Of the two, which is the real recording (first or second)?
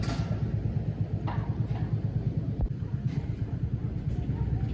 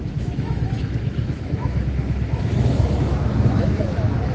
first